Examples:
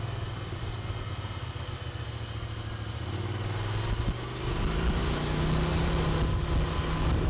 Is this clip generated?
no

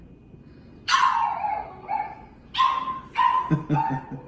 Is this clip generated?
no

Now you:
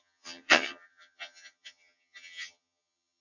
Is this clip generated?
yes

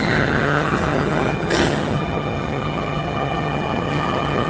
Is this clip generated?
yes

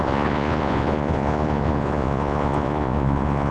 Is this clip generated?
yes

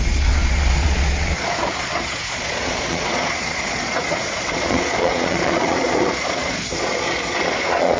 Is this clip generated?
yes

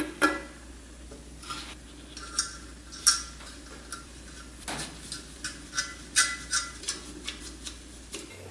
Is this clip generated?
no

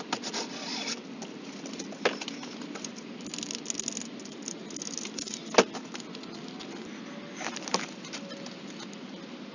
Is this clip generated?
no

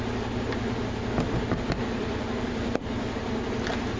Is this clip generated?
no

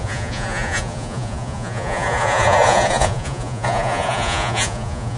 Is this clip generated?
yes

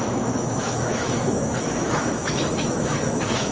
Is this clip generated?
yes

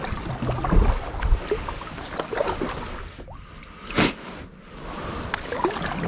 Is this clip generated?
no